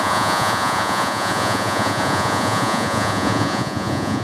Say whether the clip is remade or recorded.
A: remade